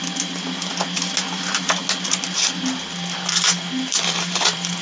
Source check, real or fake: real